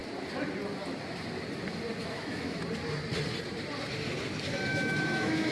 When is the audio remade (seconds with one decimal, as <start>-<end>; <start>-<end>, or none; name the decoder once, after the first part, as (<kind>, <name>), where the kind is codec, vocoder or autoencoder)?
2.0-2.6 (autoencoder, DAC-VAE); 4.7-5.5